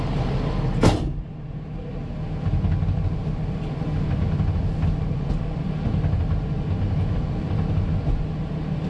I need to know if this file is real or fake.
real